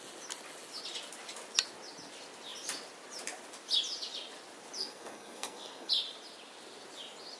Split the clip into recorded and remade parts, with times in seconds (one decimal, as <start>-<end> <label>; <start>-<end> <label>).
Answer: 0.0-4.8 recorded; 4.8-5.9 remade; 5.9-7.4 recorded